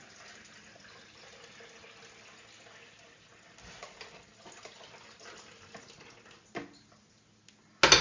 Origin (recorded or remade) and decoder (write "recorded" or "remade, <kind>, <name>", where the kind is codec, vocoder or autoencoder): recorded